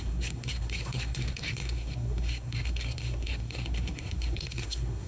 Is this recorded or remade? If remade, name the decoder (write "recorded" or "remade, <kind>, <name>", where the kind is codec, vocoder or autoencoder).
remade, codec, SNAC